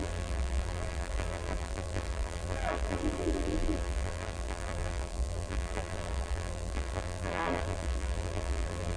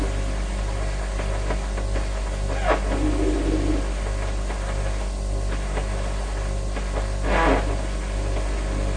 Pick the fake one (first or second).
first